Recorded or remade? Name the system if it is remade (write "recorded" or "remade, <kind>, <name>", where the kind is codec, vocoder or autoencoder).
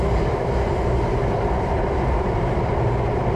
remade, vocoder, BigVGAN v2